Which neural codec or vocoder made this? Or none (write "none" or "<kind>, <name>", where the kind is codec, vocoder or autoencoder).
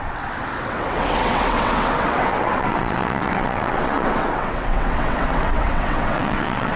vocoder, WaveNeXt